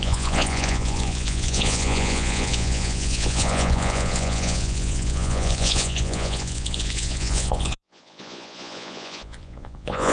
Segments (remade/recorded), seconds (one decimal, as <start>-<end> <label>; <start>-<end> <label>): 0.0-10.1 remade